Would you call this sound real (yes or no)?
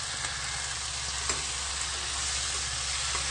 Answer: yes